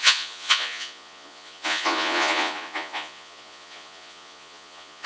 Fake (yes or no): yes